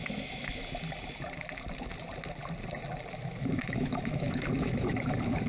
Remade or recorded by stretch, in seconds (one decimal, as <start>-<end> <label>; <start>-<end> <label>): 0.0-0.6 remade; 0.6-3.1 recorded; 3.1-5.5 remade